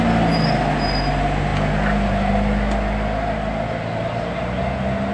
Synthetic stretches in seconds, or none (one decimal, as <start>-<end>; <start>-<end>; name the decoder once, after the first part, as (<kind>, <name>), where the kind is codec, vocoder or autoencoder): none